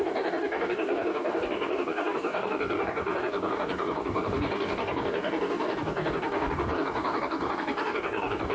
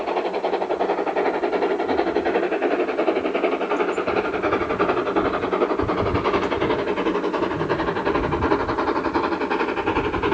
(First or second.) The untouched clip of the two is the second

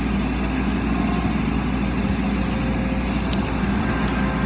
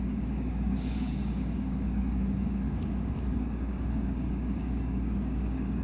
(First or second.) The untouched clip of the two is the first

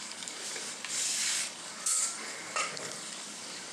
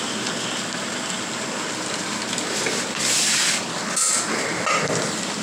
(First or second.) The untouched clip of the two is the second